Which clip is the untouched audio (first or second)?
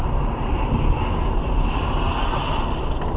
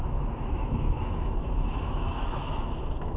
first